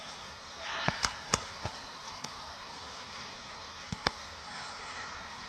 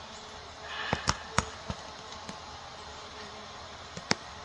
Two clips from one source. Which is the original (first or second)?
second